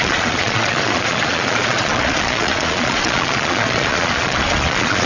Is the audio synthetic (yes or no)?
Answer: yes